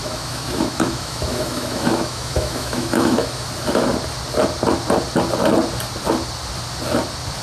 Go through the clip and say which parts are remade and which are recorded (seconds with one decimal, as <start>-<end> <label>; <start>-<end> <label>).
0.0-3.5 remade; 3.5-7.4 recorded